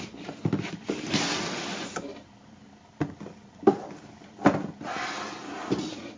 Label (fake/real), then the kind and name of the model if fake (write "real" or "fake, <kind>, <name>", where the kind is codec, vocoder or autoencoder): real